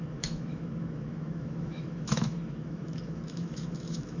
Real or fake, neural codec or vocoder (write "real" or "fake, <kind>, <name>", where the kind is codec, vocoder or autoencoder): fake, autoencoder, DAC-VAE